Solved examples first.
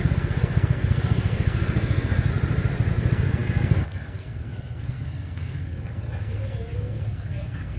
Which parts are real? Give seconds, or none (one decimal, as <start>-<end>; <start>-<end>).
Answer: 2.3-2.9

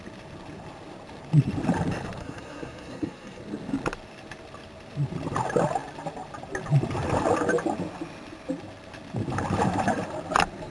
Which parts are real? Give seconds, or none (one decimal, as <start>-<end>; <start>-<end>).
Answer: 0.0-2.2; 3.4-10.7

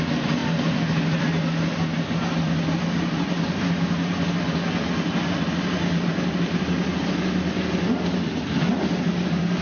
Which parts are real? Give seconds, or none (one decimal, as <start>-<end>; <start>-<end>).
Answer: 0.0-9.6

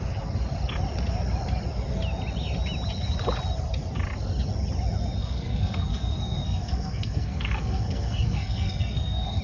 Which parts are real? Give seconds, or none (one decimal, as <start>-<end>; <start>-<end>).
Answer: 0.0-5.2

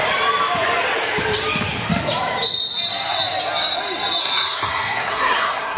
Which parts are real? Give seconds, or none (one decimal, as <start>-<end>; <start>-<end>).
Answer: 0.0-4.2

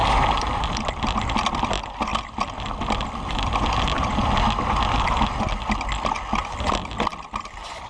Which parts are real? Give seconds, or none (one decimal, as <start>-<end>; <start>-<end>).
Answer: 0.0-7.9